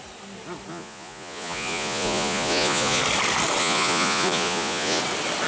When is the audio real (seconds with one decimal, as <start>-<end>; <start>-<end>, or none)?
0.0-0.7; 3.0-3.6; 5.0-5.5